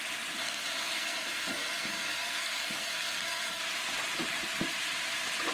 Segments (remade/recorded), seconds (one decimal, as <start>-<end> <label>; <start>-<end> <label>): 0.0-0.4 recorded; 0.4-3.6 remade; 3.6-5.5 recorded